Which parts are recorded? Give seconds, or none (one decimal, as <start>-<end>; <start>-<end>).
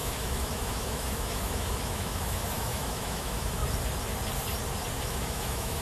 3.6-5.0